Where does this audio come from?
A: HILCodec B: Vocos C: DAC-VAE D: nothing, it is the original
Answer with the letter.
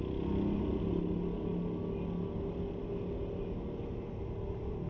D